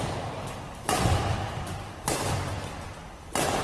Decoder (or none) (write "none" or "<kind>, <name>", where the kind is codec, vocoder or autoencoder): none